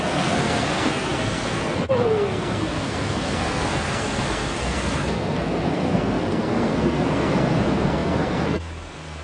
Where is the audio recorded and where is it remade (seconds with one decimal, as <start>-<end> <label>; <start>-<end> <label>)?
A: 0.0-9.2 remade